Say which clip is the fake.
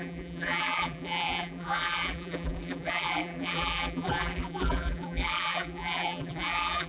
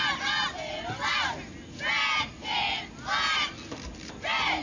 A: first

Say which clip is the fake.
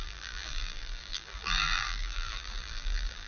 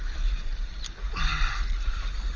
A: first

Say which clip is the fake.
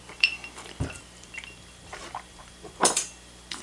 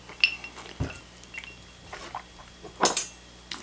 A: first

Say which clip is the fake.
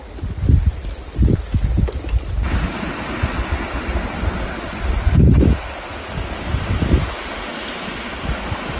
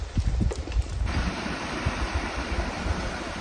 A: second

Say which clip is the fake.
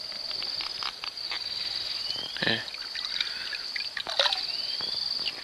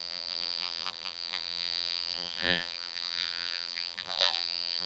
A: second